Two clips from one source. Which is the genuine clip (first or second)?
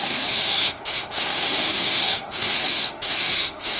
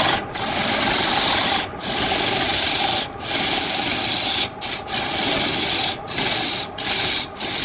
second